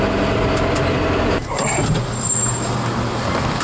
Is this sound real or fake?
real